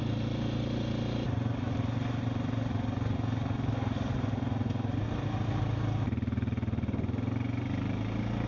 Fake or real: real